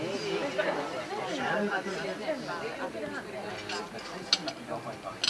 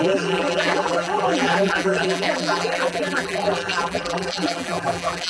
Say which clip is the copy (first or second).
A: second